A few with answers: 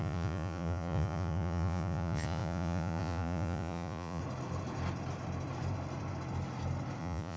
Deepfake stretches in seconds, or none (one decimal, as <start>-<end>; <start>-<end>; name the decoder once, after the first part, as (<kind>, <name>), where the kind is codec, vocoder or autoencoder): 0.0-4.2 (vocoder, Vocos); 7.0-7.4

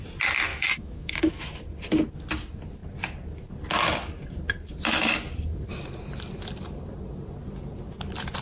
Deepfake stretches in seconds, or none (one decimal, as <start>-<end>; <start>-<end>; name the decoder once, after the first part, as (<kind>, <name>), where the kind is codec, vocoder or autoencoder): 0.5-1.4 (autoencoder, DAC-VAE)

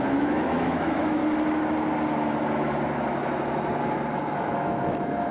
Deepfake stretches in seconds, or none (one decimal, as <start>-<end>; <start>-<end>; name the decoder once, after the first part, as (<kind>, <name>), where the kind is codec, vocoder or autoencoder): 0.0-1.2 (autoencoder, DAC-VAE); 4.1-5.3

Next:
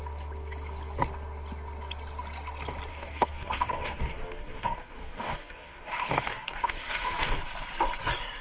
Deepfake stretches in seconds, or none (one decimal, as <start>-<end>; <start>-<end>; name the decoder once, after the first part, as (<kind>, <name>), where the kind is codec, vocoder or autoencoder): 2.9-7.4 (codec, DAC)